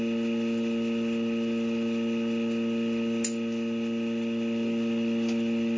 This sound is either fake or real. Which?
real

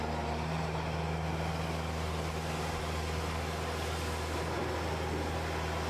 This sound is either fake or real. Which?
real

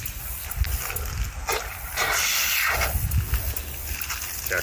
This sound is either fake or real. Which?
real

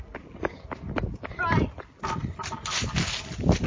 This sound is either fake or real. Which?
real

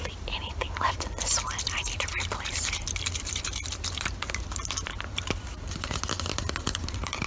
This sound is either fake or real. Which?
fake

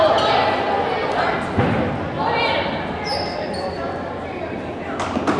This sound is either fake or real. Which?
real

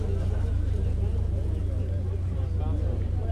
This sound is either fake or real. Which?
real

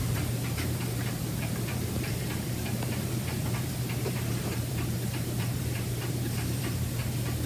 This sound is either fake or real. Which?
fake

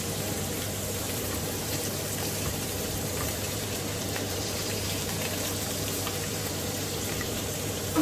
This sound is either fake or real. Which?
fake